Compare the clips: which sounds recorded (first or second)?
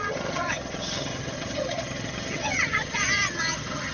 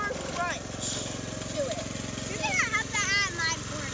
second